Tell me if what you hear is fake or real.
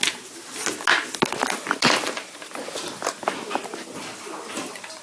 real